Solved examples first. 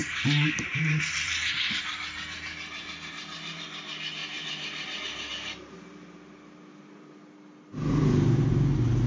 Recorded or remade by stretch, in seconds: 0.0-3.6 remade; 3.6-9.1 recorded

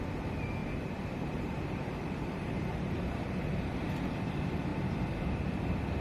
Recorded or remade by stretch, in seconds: 0.0-0.6 recorded; 0.6-4.2 remade; 4.2-6.0 recorded

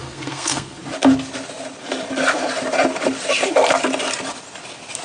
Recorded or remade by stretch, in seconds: 0.0-0.8 remade; 0.8-5.0 recorded